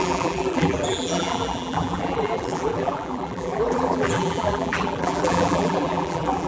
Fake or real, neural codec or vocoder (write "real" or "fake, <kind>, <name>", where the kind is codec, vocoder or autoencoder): fake, vocoder, BigVGAN v2